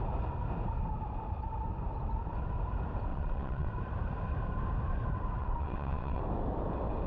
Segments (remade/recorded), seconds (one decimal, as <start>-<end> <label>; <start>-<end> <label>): 0.0-3.1 recorded; 3.1-3.7 remade; 3.7-5.4 recorded; 5.4-6.2 remade; 6.2-7.1 recorded